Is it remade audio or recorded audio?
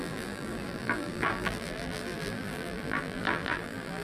remade